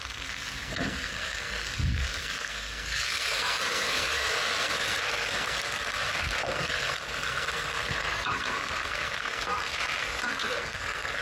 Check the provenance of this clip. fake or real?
fake